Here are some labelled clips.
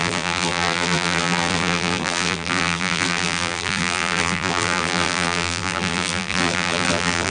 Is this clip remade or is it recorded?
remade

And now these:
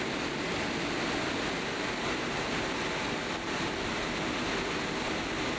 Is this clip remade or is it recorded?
recorded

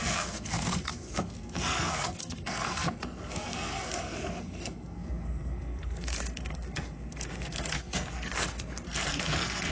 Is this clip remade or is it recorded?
remade